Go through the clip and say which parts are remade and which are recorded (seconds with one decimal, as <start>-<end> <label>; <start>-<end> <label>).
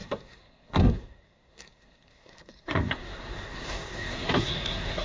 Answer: 0.0-5.0 remade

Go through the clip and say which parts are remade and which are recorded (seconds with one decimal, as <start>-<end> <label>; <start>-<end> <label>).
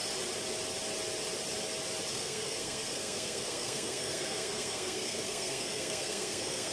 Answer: 0.0-2.1 recorded; 2.1-6.7 remade